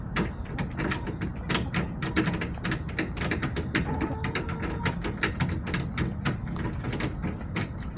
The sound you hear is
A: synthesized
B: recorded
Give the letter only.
B